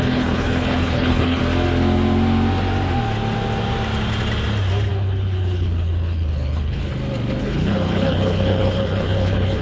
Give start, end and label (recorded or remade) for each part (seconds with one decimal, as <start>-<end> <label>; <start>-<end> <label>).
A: 0.0-1.4 remade; 1.4-4.9 recorded; 4.9-6.9 remade; 6.9-7.4 recorded; 7.4-9.6 remade

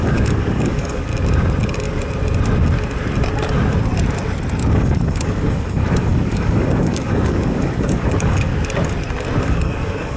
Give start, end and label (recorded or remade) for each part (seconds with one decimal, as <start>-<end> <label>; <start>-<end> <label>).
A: 0.0-1.1 remade; 1.1-4.7 recorded; 4.7-8.5 remade; 8.5-9.4 recorded; 9.4-10.2 remade